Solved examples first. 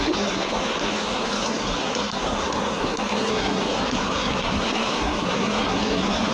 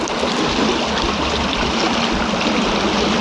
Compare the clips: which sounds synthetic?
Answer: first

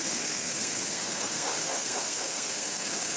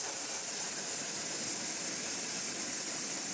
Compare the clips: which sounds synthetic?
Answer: first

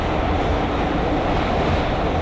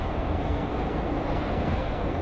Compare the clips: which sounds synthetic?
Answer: second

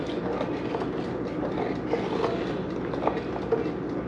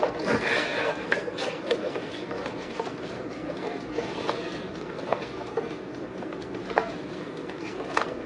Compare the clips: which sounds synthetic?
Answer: second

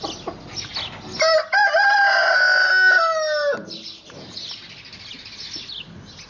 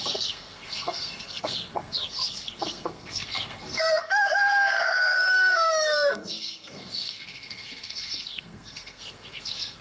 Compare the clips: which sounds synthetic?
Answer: second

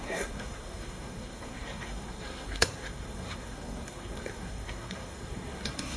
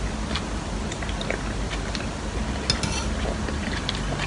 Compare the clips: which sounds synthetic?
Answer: first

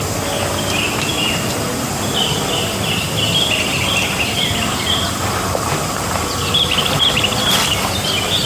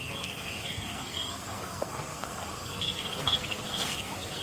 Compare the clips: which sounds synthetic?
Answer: second